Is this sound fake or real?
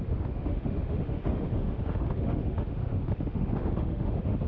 fake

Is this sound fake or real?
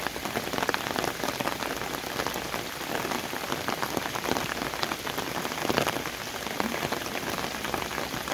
real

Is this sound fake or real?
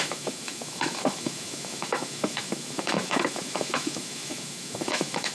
fake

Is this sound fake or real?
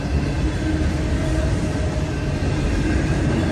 real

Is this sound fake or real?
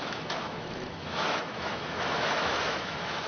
fake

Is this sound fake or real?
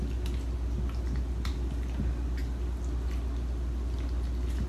real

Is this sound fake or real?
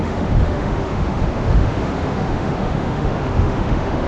fake